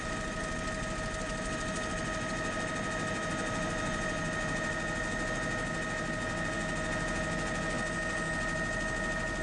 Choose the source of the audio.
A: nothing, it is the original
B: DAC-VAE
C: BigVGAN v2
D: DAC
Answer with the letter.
A